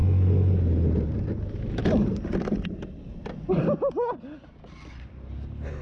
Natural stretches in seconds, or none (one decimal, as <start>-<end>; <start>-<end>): 0.0-5.8